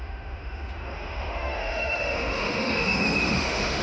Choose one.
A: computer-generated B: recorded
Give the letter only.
A